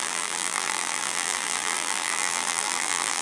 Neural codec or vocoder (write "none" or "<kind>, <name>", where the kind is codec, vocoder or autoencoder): vocoder, BigVGAN v2